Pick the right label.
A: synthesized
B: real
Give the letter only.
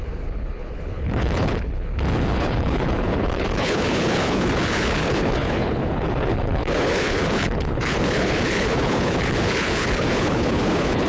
A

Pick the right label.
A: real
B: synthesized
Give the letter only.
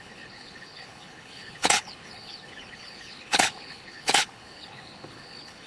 B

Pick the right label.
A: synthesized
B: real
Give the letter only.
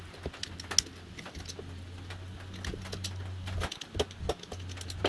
B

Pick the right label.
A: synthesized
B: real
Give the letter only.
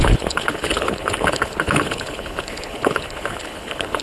A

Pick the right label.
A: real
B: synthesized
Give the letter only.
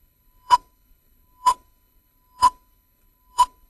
B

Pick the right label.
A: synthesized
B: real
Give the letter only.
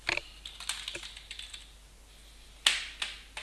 B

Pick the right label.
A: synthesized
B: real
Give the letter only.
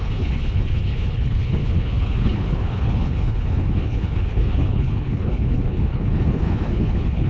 A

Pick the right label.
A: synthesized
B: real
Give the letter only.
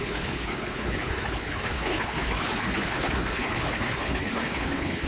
A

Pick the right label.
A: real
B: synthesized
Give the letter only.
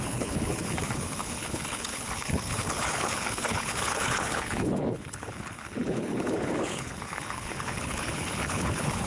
B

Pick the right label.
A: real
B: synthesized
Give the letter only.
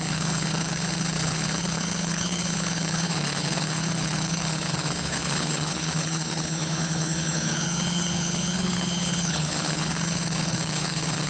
B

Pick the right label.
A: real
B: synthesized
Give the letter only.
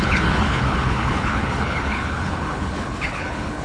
B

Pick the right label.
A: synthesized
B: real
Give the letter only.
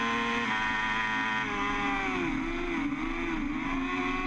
B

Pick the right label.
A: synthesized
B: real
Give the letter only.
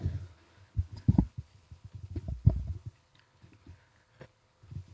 A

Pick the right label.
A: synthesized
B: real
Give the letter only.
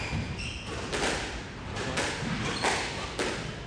B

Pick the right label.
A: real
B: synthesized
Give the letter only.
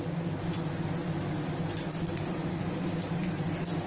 A